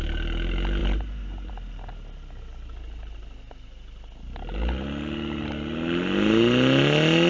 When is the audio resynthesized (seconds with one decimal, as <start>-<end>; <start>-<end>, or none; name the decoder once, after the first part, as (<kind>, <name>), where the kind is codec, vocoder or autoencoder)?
0.8-1.5 (vocoder, BigVGAN v2)